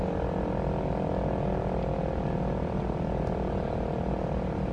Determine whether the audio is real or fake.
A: real